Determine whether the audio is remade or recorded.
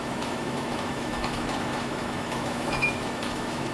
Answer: remade